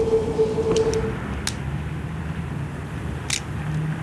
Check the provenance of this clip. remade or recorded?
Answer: recorded